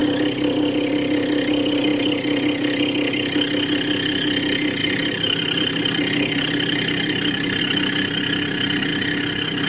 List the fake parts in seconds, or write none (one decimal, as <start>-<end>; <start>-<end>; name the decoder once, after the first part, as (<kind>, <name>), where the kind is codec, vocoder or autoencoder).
4.8-7.6 (vocoder, BigVGAN v2)